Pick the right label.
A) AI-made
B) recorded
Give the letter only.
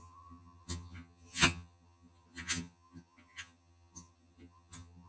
A